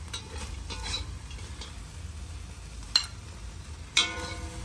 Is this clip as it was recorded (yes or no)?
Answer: yes